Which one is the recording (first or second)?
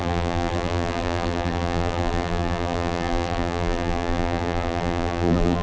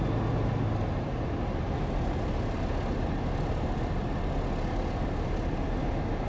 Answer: second